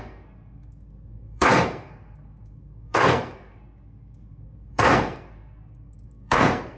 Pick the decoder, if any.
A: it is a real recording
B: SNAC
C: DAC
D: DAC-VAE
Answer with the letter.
B